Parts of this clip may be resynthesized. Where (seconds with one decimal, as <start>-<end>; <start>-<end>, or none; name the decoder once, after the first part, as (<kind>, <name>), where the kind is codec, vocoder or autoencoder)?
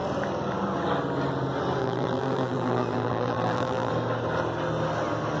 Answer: 1.8-3.9 (vocoder, BigVGAN v2)